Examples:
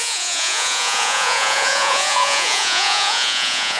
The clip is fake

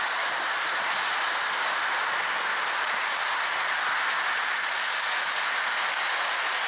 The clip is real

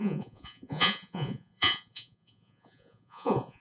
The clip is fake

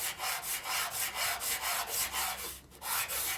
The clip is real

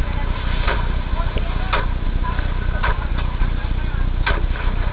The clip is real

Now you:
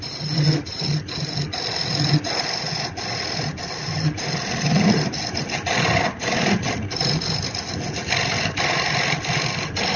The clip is real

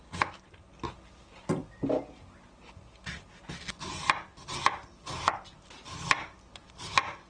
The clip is real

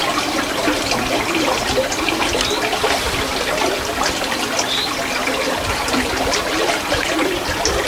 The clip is real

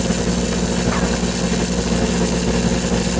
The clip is real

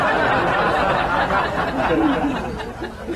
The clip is real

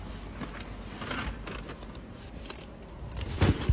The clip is real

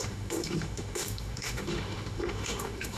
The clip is fake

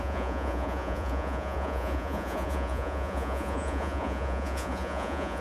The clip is fake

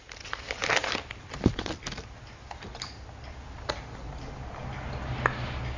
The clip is real